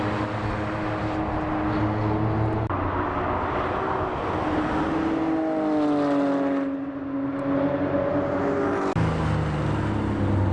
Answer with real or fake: real